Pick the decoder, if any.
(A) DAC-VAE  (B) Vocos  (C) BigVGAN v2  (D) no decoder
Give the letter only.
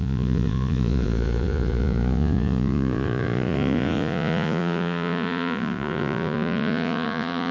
B